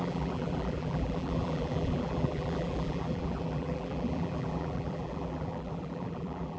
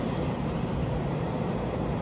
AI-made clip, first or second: first